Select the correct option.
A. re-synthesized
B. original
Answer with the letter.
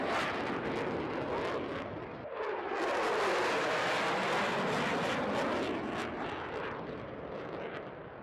B